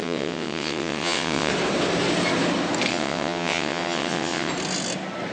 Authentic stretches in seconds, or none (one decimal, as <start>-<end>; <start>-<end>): 1.5-2.9; 4.5-5.3